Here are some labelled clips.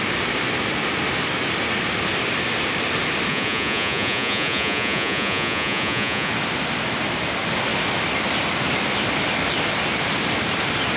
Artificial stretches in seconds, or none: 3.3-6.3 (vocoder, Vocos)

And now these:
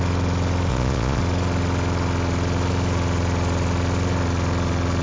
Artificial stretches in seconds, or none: 0.7-1.2 (vocoder, Vocos)

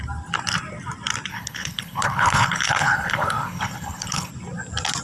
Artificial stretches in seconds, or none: 1.3-4.3 (codec, HILCodec)

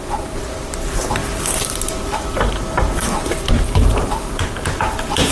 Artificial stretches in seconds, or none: none

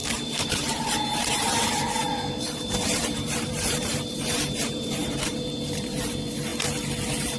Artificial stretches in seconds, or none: 0.0-6.5 (vocoder, BigVGAN v2)